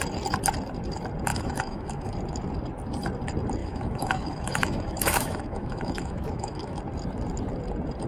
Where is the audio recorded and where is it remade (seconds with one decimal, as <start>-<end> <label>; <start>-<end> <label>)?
0.0-1.3 recorded; 1.3-2.1 remade; 2.1-3.6 recorded; 3.6-6.8 remade; 6.8-8.1 recorded